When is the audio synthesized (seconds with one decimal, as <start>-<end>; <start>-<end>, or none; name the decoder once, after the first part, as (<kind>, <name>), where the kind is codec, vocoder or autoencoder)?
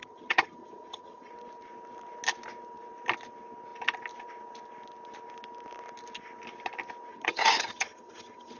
0.0-1.3 (vocoder, HiFi-GAN); 7.1-8.6